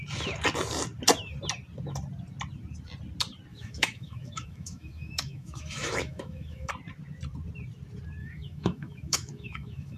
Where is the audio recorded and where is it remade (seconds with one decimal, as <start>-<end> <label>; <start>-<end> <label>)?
0.0-3.5 recorded; 3.5-6.7 remade; 6.7-8.2 recorded; 8.2-10.0 remade